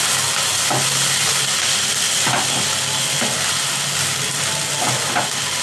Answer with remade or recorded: recorded